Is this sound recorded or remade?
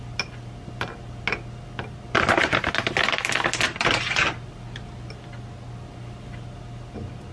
recorded